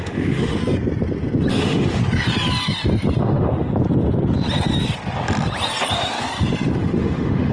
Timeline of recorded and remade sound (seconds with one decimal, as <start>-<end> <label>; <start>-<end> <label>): 0.0-0.6 remade; 0.6-1.5 recorded; 1.5-2.0 remade; 2.0-3.2 recorded; 3.2-3.7 remade; 3.7-6.8 recorded; 6.8-7.5 remade

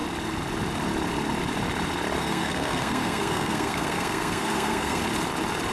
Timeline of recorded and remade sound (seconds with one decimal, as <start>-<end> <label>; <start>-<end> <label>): 0.0-2.2 recorded; 2.2-5.0 remade; 5.0-5.7 recorded

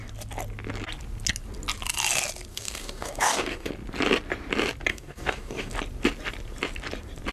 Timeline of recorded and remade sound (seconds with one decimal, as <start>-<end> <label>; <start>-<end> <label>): 0.0-2.5 recorded; 2.5-3.7 remade; 3.7-4.9 recorded; 4.9-5.7 remade; 5.7-7.3 recorded

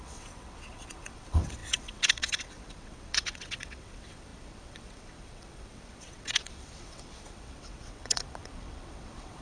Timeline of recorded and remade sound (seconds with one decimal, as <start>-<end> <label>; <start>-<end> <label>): 0.0-9.4 remade